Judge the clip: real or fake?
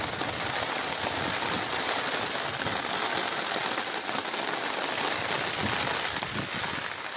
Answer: real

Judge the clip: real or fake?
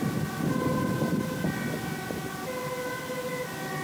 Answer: real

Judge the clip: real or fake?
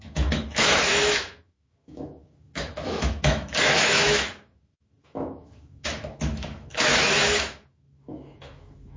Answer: fake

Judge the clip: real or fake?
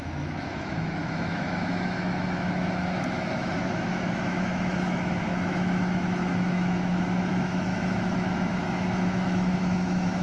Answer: fake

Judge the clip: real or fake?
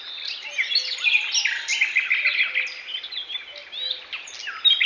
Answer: real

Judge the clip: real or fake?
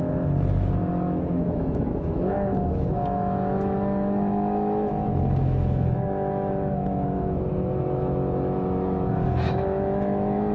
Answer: fake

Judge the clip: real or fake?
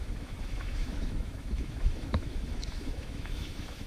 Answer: fake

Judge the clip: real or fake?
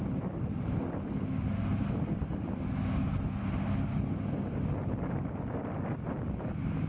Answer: real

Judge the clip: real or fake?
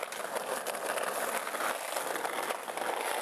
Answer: real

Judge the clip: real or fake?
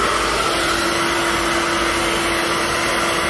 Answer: real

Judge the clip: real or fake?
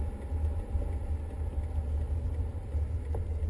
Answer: real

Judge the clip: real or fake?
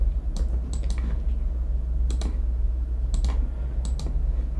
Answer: real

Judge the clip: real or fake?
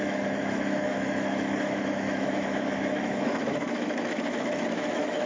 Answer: fake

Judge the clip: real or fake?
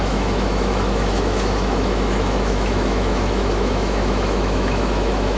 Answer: fake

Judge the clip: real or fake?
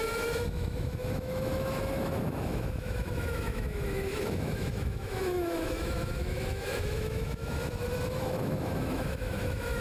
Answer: fake